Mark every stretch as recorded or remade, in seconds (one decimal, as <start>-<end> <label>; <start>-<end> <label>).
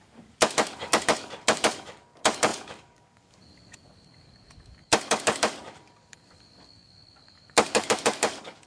0.0-8.7 remade